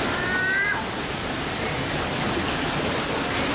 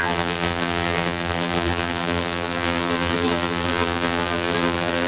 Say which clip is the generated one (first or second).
second